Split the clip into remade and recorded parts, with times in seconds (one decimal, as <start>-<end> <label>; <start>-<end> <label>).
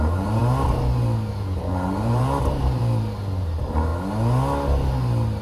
0.0-0.4 remade; 0.4-1.3 recorded; 1.3-3.9 remade; 3.9-5.4 recorded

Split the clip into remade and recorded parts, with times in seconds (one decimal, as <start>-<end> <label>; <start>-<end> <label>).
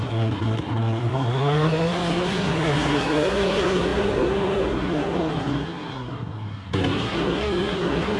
0.0-8.2 remade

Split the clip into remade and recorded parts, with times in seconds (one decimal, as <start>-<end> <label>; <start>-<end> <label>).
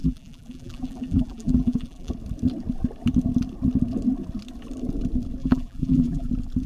0.0-2.1 remade; 2.1-5.4 recorded; 5.4-6.3 remade; 6.3-6.7 recorded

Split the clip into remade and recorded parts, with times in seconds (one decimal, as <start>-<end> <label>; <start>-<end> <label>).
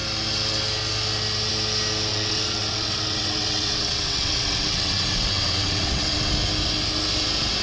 0.0-2.1 recorded; 2.1-6.3 remade; 6.3-7.6 recorded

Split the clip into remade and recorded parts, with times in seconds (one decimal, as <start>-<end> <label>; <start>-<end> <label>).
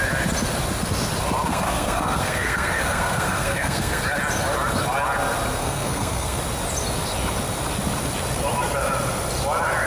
0.0-1.5 recorded; 1.5-4.0 remade; 4.0-5.6 recorded; 5.6-6.4 remade; 6.4-9.9 recorded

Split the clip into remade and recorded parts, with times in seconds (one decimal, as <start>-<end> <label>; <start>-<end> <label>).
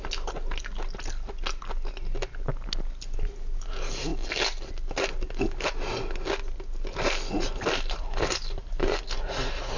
0.0-9.8 recorded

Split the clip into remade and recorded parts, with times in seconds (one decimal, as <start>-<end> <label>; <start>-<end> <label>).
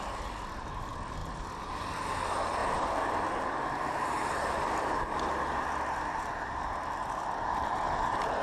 0.0-8.4 recorded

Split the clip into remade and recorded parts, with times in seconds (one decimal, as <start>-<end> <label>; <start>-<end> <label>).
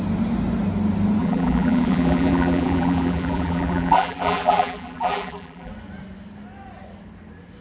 0.0-1.2 recorded; 1.2-5.7 remade; 5.7-7.6 recorded